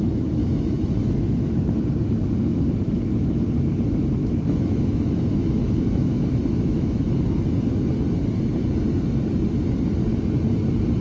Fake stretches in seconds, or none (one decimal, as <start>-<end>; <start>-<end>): 0.4-1.6; 4.2-7.4